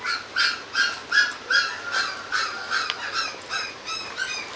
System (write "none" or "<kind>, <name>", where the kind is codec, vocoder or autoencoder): none